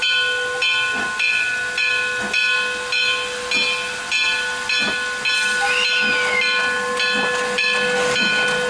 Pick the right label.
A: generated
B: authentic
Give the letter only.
B